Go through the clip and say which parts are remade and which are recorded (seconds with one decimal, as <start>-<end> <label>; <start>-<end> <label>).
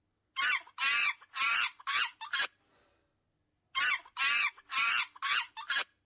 0.0-6.1 recorded